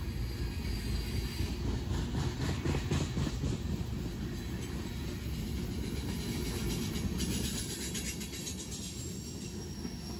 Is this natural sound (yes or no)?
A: yes